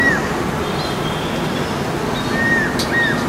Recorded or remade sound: recorded